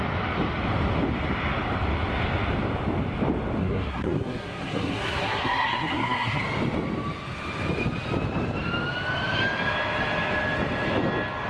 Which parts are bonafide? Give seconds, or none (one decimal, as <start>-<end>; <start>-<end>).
0.0-3.6; 6.4-11.5